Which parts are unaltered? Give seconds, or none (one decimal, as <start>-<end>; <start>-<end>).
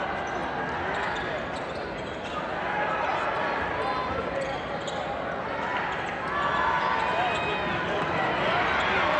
0.0-9.2